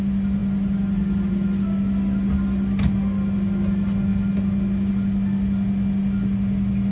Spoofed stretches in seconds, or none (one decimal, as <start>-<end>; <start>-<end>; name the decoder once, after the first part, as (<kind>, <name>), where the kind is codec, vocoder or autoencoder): none